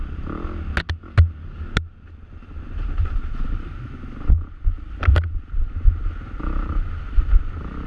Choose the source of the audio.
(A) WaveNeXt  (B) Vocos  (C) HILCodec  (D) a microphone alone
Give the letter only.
D